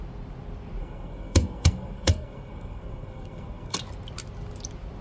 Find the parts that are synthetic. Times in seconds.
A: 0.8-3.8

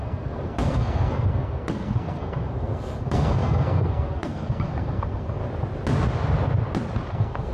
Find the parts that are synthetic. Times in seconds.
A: 0.0-5.4; 7.1-7.5

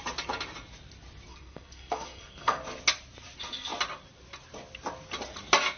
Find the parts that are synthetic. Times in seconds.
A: 1.3-2.6

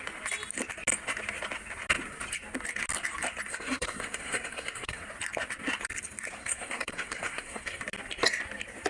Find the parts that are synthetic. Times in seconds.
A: 3.5-5.0; 6.4-7.8